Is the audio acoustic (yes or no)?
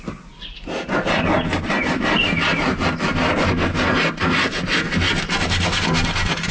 yes